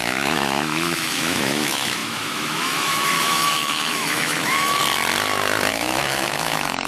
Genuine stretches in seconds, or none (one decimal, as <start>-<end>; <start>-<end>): 4.8-5.7